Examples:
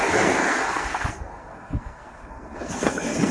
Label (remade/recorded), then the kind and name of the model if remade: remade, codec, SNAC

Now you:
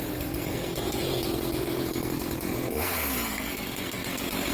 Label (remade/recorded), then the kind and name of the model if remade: remade, codec, SNAC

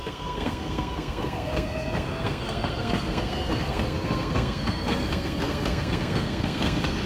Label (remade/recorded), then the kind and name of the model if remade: remade, codec, SNAC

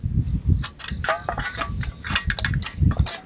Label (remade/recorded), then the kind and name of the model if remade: recorded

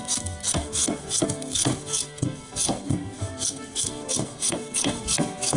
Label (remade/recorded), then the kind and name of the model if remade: remade, codec, SNAC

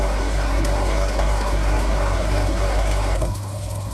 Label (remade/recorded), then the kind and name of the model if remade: remade, codec, SNAC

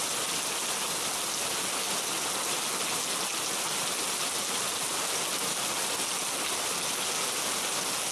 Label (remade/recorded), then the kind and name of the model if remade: recorded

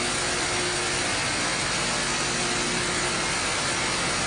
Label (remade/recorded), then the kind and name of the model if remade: recorded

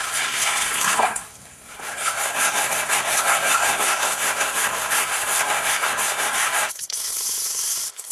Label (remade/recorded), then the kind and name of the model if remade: remade, codec, SNAC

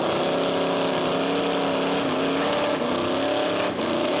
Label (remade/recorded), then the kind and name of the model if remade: recorded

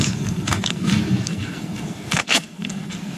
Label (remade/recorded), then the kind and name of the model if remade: remade, codec, SNAC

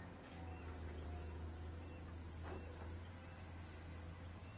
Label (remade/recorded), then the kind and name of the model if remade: recorded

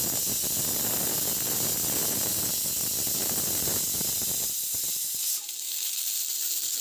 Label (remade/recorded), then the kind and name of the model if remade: recorded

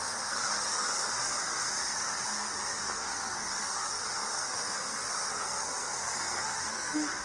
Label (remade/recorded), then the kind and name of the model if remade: remade, codec, SNAC